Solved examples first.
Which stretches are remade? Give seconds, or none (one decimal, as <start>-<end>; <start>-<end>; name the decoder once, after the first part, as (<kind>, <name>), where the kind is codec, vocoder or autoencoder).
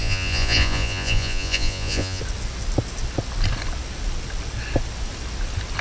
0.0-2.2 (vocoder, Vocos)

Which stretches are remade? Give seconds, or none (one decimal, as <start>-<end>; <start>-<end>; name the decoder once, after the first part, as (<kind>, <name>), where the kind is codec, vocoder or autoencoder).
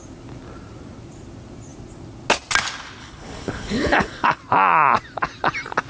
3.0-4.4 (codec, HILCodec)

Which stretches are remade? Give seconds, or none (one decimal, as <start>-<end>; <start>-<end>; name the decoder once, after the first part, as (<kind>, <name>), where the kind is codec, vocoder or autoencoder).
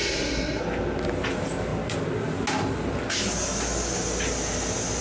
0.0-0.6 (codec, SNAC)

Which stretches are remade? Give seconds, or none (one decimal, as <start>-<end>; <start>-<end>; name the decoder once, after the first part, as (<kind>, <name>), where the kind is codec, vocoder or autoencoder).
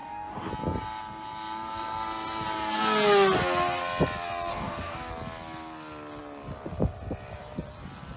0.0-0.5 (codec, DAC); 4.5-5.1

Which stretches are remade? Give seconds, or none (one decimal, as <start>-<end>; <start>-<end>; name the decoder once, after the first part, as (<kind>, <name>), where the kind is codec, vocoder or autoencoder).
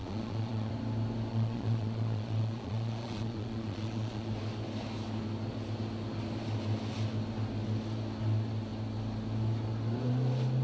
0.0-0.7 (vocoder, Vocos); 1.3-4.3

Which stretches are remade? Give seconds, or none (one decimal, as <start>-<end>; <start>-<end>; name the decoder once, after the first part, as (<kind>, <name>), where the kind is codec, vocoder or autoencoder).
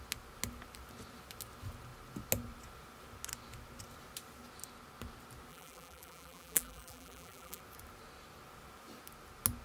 5.5-7.6 (vocoder, BigVGAN v2)